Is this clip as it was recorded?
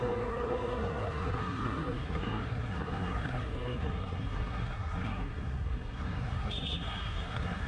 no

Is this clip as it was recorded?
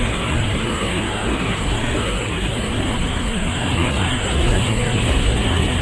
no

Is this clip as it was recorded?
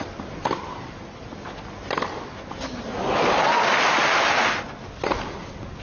yes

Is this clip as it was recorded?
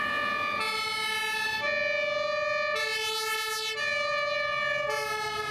yes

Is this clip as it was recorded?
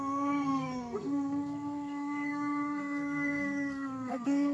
no